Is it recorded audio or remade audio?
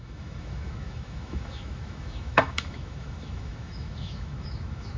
remade